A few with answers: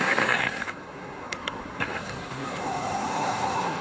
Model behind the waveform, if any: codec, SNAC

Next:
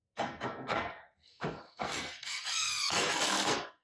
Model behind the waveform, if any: codec, SNAC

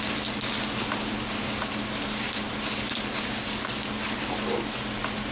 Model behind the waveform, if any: none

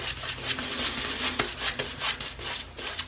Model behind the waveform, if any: none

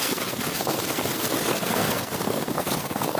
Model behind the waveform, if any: codec, SNAC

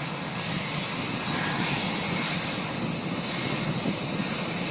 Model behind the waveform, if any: none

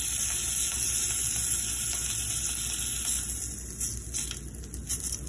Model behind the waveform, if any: none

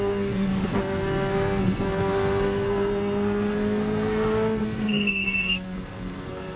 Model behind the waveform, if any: codec, SNAC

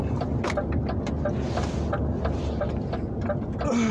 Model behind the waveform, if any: none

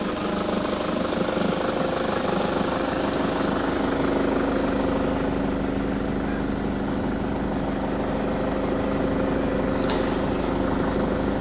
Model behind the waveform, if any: none